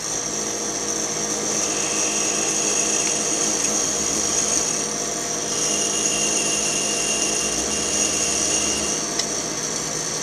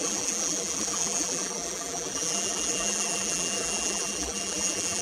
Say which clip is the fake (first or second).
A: second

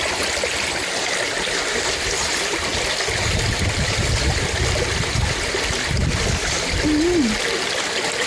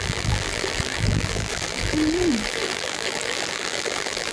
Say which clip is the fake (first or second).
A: second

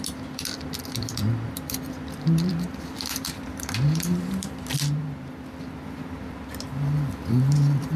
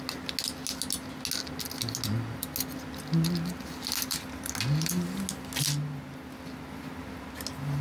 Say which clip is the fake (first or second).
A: first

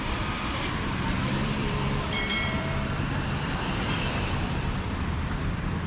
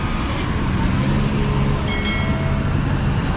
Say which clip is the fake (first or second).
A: first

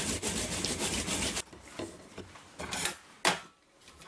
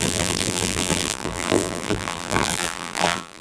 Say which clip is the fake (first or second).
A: second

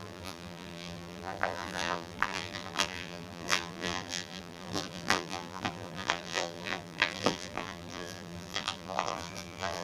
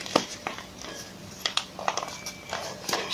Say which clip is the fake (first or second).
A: first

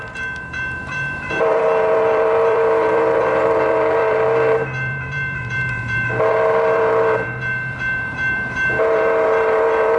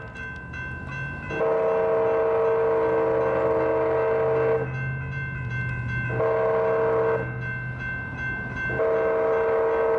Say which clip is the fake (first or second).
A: first